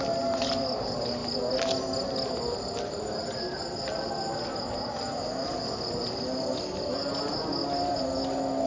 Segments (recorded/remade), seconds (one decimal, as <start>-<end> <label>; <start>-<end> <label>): 0.0-8.7 recorded